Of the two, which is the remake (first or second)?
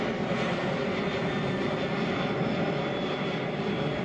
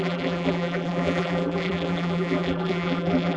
second